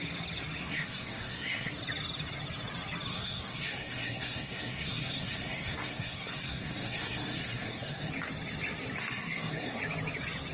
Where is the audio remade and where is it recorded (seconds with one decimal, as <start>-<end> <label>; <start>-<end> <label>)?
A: 0.0-0.6 recorded; 0.6-1.7 remade; 1.7-3.1 recorded; 3.1-8.1 remade; 8.1-9.0 recorded; 9.0-9.8 remade; 9.8-10.5 recorded